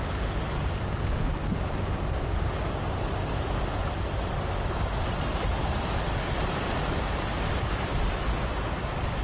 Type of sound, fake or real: real